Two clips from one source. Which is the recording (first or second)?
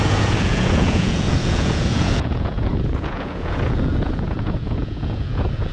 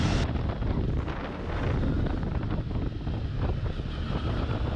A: second